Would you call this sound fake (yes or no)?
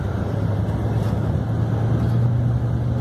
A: no